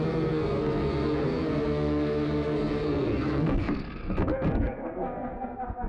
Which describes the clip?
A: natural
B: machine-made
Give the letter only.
B